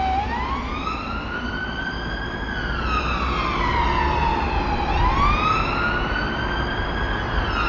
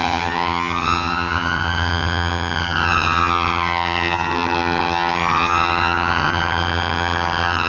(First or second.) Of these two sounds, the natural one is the first